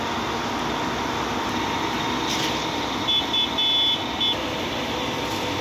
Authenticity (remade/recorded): recorded